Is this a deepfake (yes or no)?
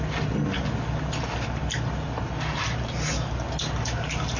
no